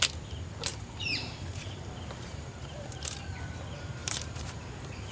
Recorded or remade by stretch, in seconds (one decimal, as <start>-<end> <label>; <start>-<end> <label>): 0.0-0.7 recorded; 0.7-3.4 remade; 3.4-4.0 recorded; 4.0-5.1 remade